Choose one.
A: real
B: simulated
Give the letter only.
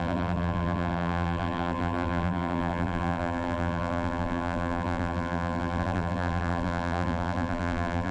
B